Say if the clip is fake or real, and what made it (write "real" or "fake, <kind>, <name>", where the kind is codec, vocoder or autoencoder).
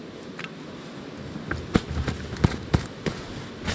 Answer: real